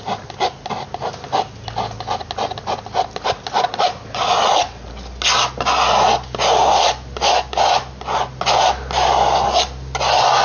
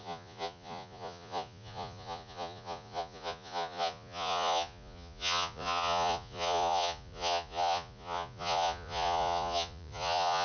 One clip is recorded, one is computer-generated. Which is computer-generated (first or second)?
second